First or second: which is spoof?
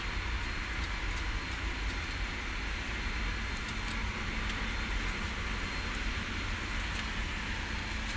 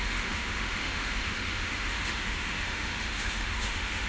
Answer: second